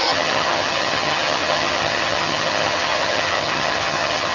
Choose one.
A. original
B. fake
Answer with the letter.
B